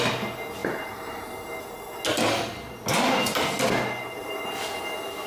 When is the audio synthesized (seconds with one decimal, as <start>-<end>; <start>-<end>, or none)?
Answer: none